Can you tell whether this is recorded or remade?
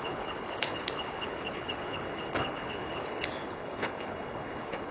remade